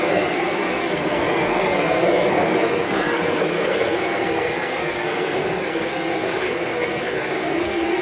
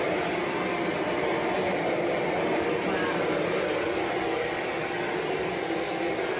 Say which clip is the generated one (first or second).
first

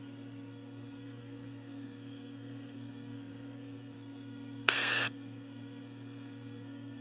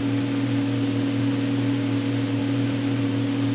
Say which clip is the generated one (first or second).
first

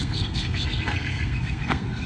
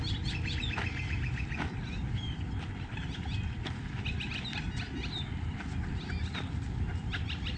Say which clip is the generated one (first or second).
first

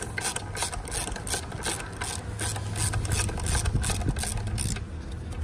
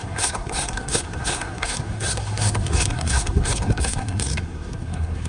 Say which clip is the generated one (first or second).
second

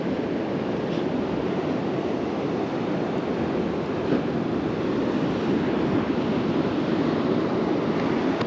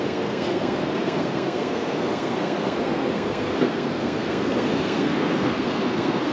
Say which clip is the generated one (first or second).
second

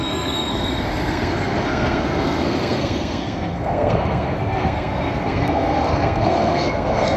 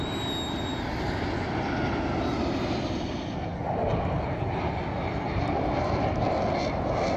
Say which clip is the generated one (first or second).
first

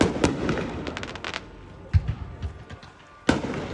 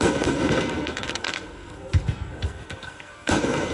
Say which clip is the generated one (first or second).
second